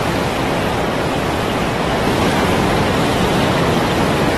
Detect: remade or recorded recorded